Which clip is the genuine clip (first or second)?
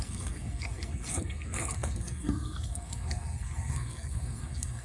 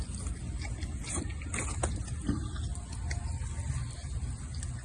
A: second